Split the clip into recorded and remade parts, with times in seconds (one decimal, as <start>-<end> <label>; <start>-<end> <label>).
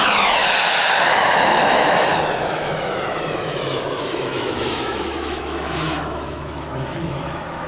0.0-0.4 remade; 0.4-0.9 recorded; 0.9-7.7 remade